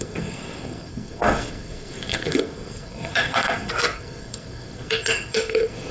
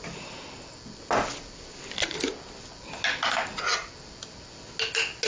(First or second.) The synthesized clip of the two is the first